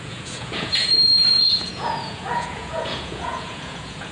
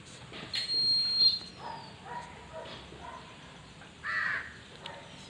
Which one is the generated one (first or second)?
first